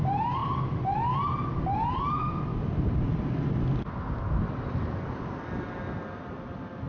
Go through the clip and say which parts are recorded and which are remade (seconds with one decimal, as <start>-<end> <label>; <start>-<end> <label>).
0.0-6.9 recorded